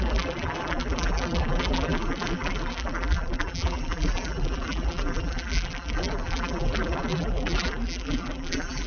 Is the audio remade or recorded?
remade